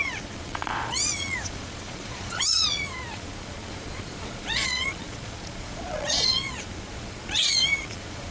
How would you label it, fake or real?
fake